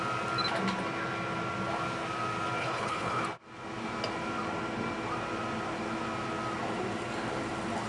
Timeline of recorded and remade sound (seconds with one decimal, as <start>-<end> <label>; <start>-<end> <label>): 0.0-2.6 recorded; 2.6-3.2 remade; 3.2-7.9 recorded